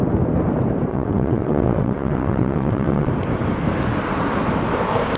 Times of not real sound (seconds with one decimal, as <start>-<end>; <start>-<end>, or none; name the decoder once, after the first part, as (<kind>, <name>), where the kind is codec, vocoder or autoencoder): 0.9-3.1 (vocoder, WaveNeXt)

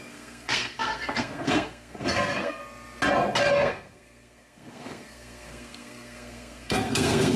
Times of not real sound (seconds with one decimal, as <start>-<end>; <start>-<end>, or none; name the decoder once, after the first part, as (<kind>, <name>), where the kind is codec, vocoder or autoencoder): 0.0-2.6 (codec, SNAC); 3.5-7.4

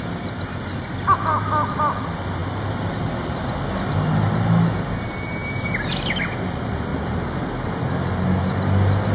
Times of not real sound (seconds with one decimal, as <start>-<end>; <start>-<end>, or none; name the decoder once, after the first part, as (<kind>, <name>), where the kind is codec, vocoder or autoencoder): none

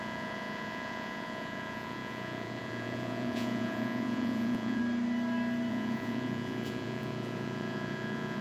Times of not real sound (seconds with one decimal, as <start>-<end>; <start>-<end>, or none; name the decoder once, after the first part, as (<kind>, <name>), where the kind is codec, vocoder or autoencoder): 0.0-4.8 (vocoder, Vocos); 5.7-8.4

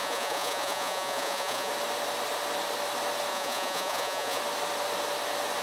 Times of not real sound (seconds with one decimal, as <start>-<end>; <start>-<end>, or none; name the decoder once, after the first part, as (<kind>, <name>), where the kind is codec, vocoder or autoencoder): 0.0-1.7 (vocoder, Vocos); 3.3-4.4